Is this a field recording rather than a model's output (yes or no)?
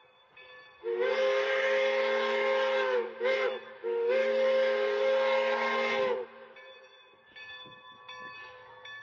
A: yes